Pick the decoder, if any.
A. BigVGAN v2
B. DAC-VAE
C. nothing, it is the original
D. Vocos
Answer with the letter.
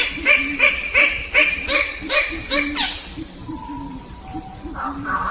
A